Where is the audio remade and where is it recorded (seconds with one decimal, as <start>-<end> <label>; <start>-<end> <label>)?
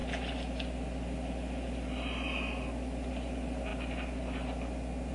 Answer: 0.0-5.1 recorded